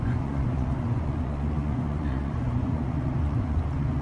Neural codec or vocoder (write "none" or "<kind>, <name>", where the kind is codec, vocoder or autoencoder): vocoder, Vocos